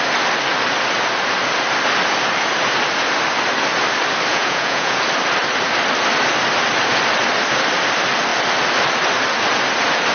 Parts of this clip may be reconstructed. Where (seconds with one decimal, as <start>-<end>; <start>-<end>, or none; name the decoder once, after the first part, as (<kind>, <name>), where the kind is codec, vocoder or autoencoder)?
4.3-5.0 (vocoder, Vocos)